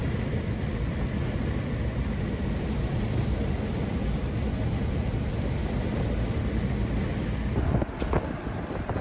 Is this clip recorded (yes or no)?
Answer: yes